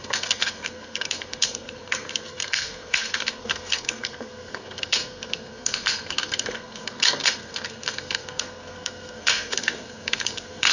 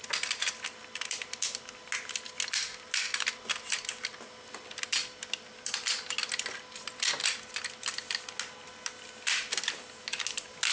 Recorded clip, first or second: second